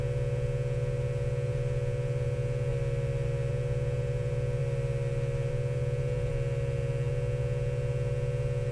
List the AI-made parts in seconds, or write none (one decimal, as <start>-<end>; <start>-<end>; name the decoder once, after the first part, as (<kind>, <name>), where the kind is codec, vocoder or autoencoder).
0.0-2.7 (vocoder, Vocos); 3.5-4.6; 5.5-6.3; 7.1-8.7